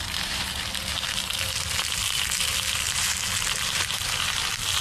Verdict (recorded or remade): recorded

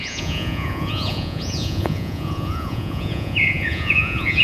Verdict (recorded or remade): remade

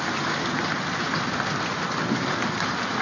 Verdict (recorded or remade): recorded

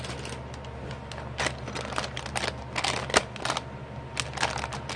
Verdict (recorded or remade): recorded